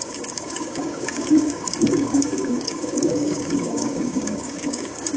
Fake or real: fake